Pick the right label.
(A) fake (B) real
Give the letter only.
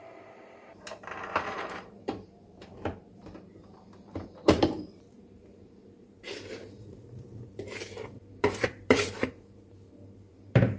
A